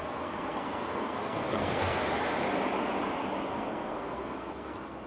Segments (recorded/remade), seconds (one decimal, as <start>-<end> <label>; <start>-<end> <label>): 0.0-2.0 remade; 2.0-3.5 recorded; 3.5-5.1 remade